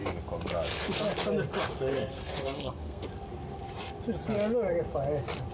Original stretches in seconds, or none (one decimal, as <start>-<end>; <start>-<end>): 0.0-1.9; 3.0-5.5